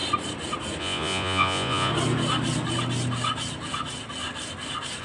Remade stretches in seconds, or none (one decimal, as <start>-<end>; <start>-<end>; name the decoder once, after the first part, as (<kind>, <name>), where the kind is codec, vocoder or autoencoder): 0.8-1.9 (vocoder, Vocos)